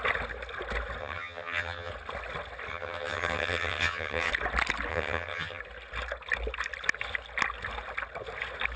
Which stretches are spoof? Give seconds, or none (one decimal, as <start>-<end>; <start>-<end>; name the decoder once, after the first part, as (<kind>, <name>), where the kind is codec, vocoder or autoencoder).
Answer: 1.0-1.9 (vocoder, HiFi-GAN); 2.7-4.3; 4.9-5.6